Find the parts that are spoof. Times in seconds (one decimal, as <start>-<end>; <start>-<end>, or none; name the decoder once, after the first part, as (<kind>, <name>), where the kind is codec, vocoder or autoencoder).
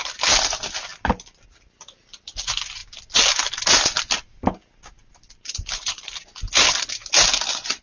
none